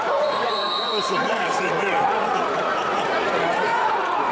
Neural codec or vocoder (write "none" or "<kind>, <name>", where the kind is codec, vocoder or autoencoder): vocoder, Vocos